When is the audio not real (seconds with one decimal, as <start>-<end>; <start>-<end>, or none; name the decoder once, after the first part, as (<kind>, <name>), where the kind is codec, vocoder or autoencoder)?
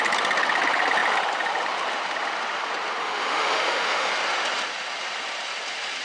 3.0-4.1 (autoencoder, DAC-VAE)